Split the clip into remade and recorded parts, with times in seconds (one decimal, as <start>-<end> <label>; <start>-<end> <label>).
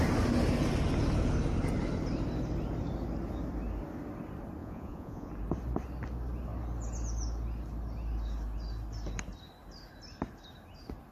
0.0-4.6 recorded; 4.6-5.3 remade; 5.3-11.1 recorded